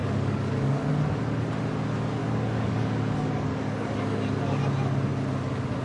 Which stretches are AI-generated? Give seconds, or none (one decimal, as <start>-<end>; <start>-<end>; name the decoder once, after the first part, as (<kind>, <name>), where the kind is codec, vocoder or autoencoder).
0.0-0.9 (codec, DAC); 2.2-4.6